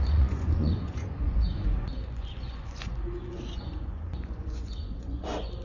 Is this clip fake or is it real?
fake